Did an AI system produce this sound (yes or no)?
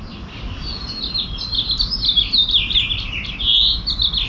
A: no